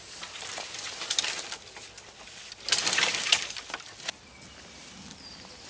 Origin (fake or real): real